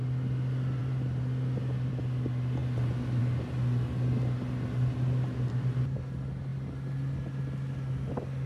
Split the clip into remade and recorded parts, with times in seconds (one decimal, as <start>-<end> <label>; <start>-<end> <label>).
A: 0.0-8.5 recorded